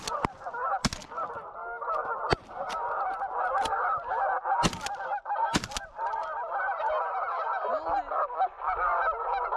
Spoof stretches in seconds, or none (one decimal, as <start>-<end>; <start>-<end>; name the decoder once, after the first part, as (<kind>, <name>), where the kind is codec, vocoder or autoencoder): none